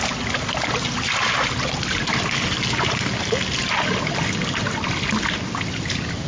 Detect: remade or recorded recorded